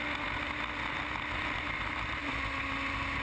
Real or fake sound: real